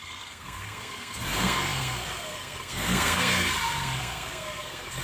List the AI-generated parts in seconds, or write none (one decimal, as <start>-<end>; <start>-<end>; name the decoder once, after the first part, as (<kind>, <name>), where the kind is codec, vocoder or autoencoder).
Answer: 0.0-5.0 (codec, SNAC)